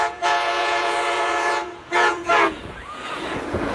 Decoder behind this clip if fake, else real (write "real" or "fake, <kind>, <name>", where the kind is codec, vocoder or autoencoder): fake, vocoder, Vocos